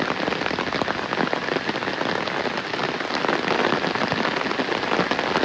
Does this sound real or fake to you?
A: real